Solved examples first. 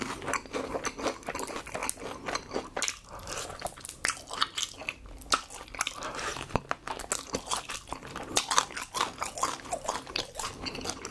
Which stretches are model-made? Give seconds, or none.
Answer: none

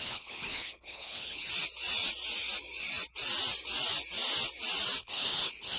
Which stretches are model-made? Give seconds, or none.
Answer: 0.0-1.5 (codec, HILCodec); 5.0-5.8

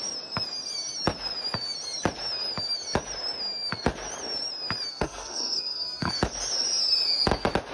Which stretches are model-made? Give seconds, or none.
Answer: 4.9-6.1 (codec, SNAC)

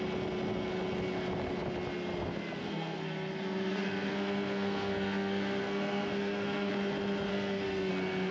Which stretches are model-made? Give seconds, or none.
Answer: 2.6-6.7 (codec, SNAC); 7.3-7.9